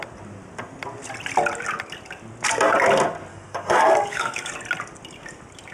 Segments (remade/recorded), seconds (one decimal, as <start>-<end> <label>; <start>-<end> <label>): 0.0-3.3 recorded; 3.3-4.5 remade; 4.5-5.7 recorded